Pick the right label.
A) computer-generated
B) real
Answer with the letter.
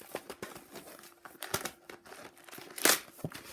B